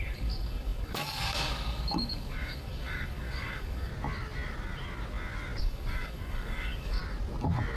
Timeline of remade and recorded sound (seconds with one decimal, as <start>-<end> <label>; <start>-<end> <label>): 0.0-3.9 remade; 3.9-5.6 recorded; 5.6-7.0 remade; 7.0-7.8 recorded